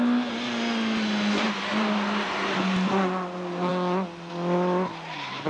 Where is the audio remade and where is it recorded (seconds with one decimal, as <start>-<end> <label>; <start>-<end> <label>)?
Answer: 0.0-5.5 recorded